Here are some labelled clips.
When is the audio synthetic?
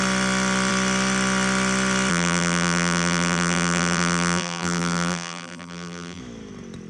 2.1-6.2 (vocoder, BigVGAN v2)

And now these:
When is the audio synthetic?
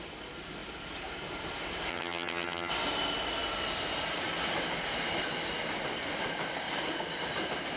1.9-2.7 (vocoder, HiFi-GAN)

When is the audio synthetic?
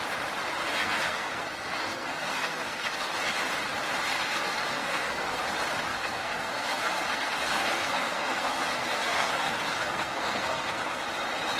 0.7-3.1 (codec, SNAC); 4.0-5.4; 5.9-11.0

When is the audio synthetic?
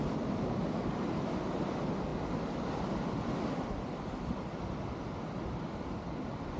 none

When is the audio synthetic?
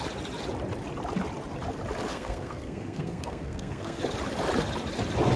2.1-4.0 (codec, SNAC)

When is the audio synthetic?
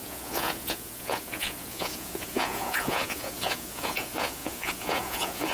0.0-5.5 (vocoder, Vocos)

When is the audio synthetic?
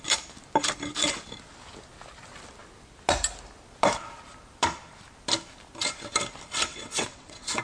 6.7-7.6 (vocoder, WaveNeXt)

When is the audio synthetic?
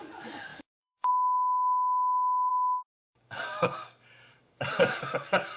0.0-2.5 (codec, DAC); 3.0-5.6